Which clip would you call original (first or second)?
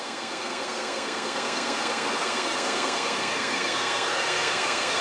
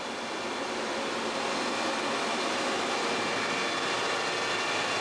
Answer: second